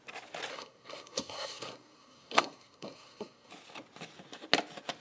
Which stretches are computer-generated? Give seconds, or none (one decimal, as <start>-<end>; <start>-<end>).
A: 0.5-3.5

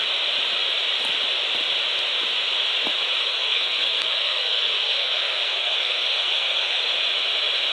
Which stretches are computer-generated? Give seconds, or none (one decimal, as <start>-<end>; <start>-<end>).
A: 3.2-6.8